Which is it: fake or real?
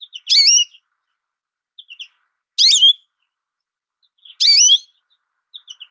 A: real